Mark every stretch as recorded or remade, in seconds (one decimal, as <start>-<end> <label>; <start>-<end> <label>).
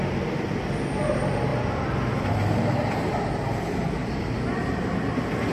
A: 0.0-1.5 recorded; 1.5-4.8 remade; 4.8-5.5 recorded